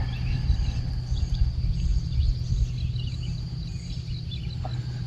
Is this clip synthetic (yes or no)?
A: no